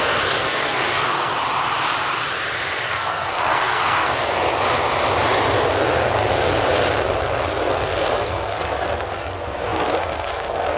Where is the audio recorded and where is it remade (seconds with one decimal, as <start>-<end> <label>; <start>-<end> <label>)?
0.0-1.3 remade; 1.3-2.8 recorded; 2.8-4.4 remade; 4.4-7.5 recorded; 7.5-10.8 remade